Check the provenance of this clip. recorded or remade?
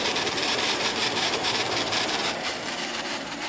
remade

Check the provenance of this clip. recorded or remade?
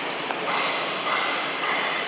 recorded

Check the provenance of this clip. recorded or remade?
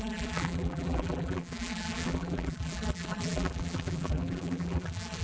remade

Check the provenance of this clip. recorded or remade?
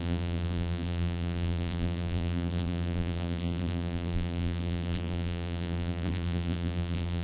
remade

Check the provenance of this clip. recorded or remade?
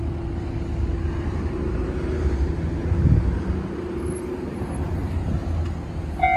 recorded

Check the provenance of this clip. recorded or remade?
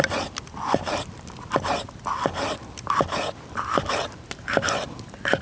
remade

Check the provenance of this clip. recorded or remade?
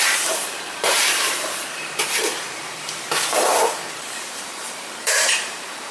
remade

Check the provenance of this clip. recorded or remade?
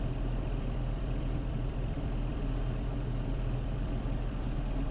remade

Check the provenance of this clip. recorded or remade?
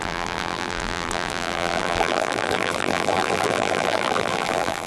remade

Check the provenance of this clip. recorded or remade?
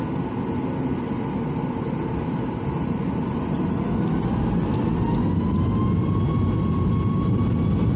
recorded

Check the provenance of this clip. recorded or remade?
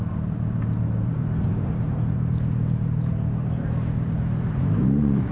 remade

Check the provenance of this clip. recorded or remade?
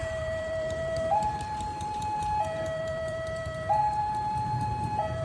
remade